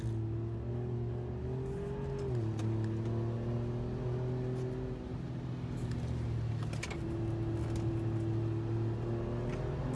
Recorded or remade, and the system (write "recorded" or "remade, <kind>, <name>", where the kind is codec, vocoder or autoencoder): recorded